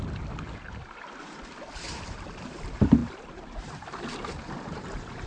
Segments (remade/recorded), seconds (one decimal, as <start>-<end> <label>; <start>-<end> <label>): 0.0-3.0 recorded; 3.0-5.3 remade